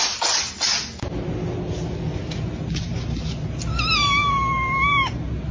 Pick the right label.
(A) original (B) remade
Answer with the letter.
A